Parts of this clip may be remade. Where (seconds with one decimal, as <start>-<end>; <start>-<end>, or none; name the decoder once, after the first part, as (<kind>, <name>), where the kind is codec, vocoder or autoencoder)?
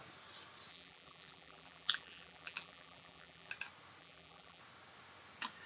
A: 0.7-3.5 (vocoder, BigVGAN v2); 4.0-4.6